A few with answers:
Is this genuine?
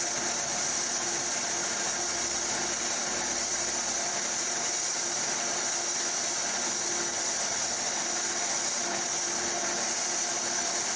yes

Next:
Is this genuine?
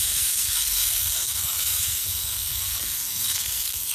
no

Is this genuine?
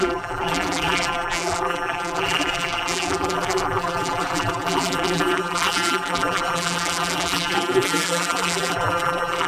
no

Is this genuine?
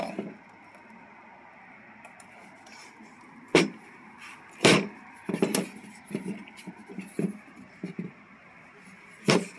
yes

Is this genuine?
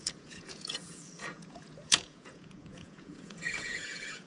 no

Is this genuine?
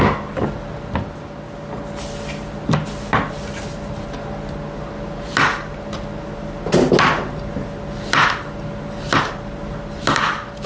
yes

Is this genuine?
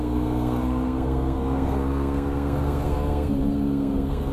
no